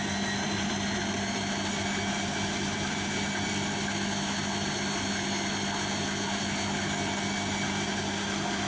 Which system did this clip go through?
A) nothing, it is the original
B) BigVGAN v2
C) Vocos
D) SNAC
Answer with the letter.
A